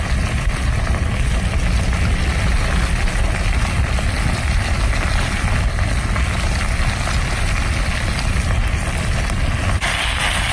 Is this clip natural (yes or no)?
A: yes